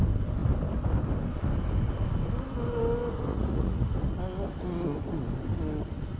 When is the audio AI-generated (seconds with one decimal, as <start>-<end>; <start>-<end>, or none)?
3.3-3.9